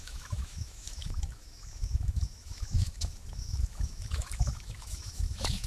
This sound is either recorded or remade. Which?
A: remade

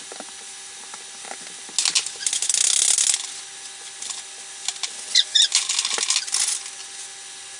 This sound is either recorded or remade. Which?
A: recorded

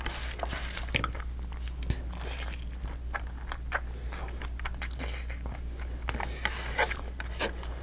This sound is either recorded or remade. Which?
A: recorded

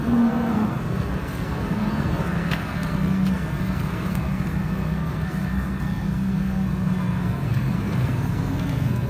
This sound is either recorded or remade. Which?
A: remade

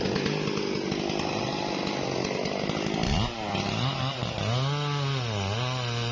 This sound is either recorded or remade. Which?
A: recorded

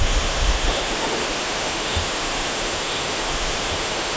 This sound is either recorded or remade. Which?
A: remade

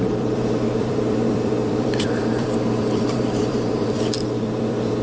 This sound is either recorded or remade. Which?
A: remade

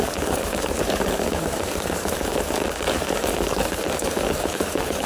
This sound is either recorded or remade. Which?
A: remade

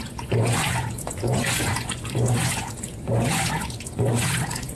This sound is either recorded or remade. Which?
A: remade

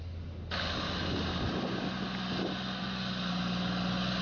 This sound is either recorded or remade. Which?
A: recorded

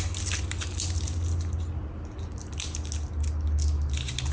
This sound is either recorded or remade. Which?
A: recorded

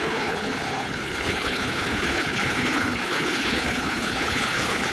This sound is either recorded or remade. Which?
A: remade